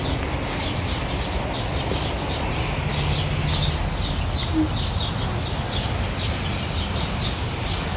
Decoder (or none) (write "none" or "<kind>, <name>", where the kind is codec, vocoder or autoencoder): none